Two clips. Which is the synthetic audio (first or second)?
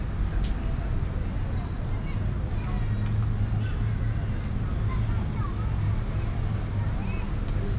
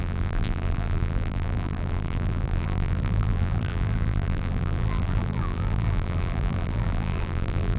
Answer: second